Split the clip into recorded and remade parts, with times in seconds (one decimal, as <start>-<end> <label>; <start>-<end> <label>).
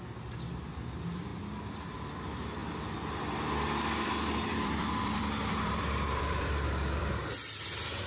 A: 0.0-4.5 recorded; 4.5-7.1 remade; 7.1-8.1 recorded